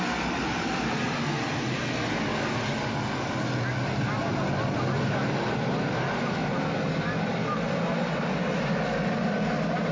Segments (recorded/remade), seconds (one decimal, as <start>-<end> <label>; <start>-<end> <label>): 0.0-9.9 recorded